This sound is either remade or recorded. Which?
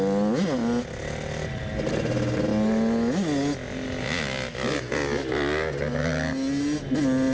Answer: recorded